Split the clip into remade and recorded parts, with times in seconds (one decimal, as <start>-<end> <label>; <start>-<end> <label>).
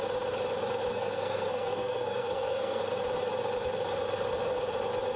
0.0-0.9 recorded; 0.9-2.8 remade; 2.8-5.2 recorded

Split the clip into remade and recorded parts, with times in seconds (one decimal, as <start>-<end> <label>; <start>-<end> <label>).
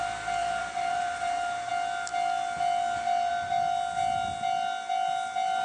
0.0-0.4 recorded; 0.4-1.7 remade; 1.7-5.6 recorded